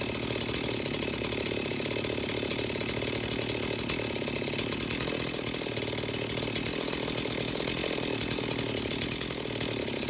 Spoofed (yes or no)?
no